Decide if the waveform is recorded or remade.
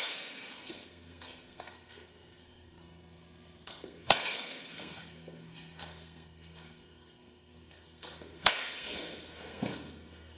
remade